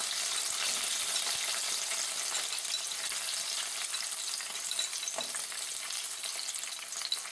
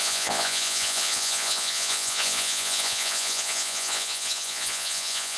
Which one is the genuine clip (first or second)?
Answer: first